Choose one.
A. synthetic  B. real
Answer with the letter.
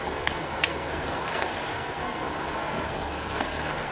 A